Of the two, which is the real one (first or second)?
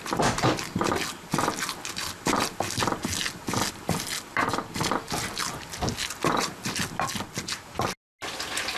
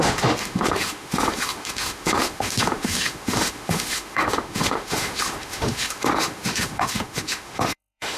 first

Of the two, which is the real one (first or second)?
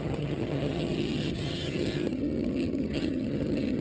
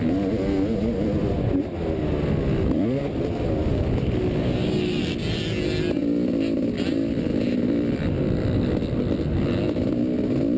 second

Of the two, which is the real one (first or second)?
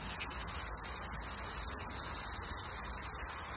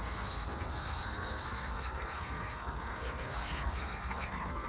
first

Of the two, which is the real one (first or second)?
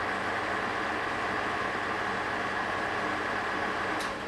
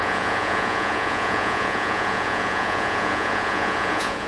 first